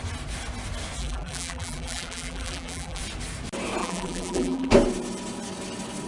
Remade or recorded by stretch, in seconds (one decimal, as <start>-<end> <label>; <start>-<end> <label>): 0.0-1.0 recorded; 1.0-3.0 remade; 3.0-3.8 recorded; 3.8-4.7 remade; 4.7-6.1 recorded